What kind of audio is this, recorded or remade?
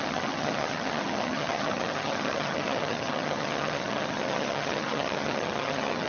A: remade